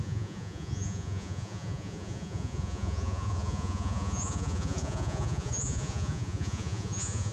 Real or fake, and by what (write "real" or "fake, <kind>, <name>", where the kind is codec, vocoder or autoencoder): fake, vocoder, Vocos